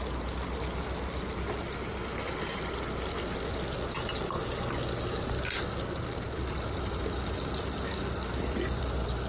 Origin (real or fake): real